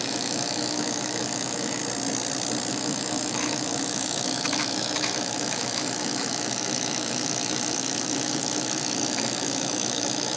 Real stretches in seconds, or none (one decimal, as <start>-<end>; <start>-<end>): 1.8-2.7